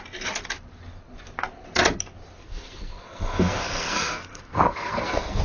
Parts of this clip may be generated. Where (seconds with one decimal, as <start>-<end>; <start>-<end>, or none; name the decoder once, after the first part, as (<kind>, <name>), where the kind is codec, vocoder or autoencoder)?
2.4-5.4 (codec, SNAC)

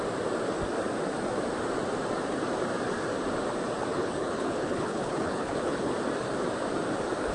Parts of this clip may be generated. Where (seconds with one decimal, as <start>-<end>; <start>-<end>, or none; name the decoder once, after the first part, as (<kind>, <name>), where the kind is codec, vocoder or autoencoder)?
3.9-5.9 (codec, HILCodec)